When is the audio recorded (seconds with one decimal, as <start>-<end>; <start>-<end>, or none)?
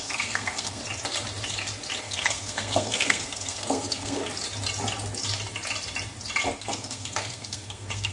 0.8-2.0; 4.2-6.6